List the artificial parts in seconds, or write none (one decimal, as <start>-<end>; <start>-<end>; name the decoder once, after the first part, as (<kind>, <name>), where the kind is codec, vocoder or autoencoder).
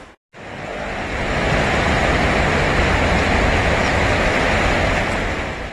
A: 0.7-4.1 (vocoder, BigVGAN v2)